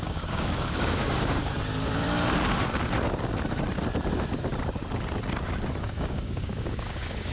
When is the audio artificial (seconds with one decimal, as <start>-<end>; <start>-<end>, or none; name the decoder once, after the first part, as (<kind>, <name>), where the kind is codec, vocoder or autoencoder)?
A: 0.0-1.4 (codec, DAC); 5.8-7.3